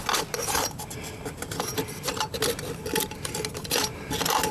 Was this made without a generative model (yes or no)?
yes